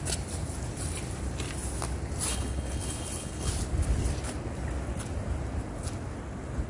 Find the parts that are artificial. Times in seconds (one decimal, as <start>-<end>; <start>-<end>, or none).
2.3-3.5